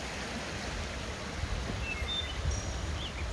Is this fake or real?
real